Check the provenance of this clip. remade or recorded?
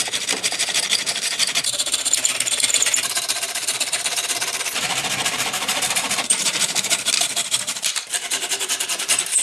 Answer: remade